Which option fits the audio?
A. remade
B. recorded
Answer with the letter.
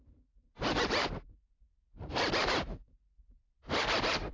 A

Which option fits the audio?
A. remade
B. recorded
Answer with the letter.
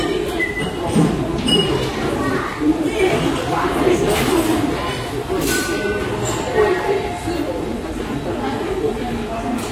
A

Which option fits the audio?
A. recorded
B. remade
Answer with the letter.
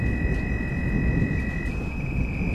A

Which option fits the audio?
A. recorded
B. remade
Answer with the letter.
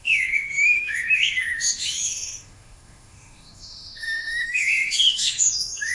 B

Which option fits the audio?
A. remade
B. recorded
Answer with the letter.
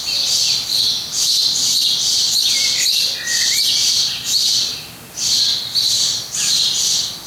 B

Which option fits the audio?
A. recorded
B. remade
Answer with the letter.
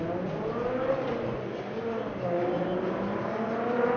A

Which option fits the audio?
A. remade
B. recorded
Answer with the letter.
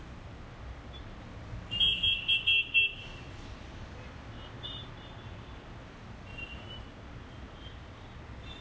B